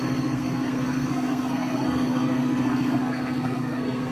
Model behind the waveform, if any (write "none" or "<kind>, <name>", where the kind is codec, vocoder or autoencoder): codec, SNAC